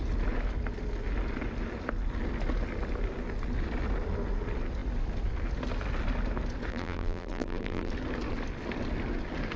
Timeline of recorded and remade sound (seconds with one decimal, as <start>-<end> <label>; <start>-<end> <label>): 0.0-6.7 recorded; 6.7-7.9 remade; 7.9-9.6 recorded